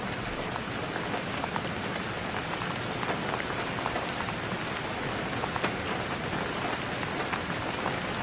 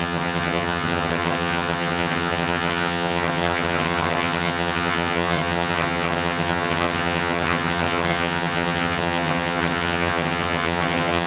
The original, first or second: first